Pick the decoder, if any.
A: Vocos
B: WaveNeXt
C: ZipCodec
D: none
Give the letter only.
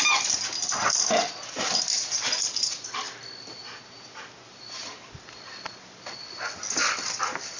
D